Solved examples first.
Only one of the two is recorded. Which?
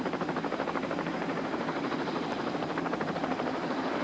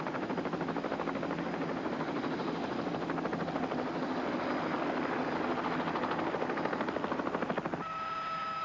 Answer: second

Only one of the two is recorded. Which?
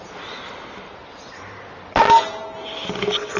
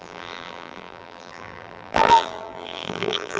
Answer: first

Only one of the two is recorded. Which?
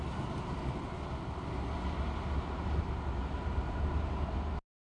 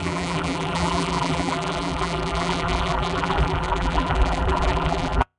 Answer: first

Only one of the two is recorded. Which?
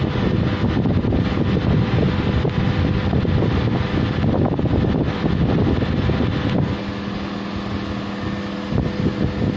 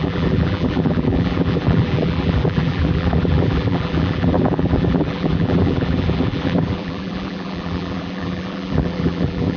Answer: first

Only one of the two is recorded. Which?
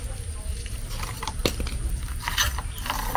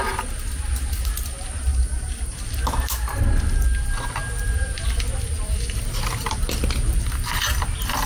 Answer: second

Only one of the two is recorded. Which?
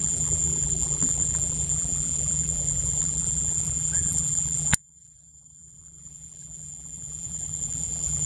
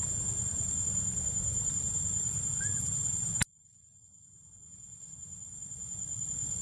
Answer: second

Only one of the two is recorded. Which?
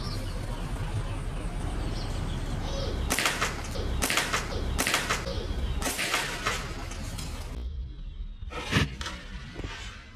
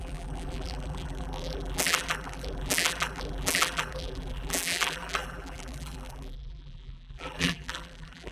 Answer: first